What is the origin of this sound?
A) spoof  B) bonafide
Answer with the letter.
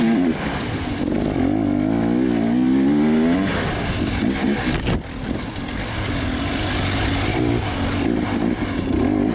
B